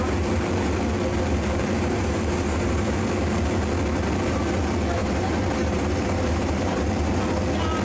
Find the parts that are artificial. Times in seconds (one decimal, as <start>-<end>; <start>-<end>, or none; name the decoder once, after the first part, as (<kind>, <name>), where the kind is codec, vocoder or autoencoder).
1.1-2.9 (vocoder, BigVGAN v2); 5.0-6.9